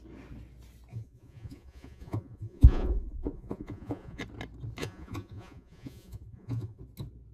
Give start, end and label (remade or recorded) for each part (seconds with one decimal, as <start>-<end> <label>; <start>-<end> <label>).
0.0-0.9 recorded; 0.9-4.2 remade; 4.2-4.8 recorded; 4.8-6.8 remade; 6.8-7.3 recorded